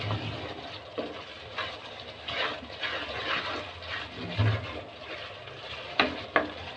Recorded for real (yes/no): no